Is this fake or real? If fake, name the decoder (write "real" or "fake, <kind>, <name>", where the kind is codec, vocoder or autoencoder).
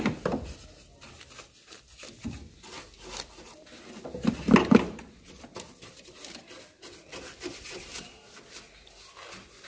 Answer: real